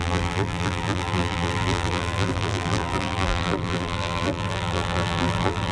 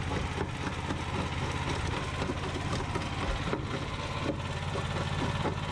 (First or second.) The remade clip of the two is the first